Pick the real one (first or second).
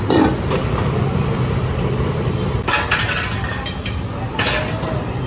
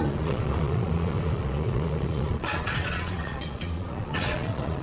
first